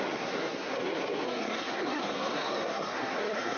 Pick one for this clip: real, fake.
fake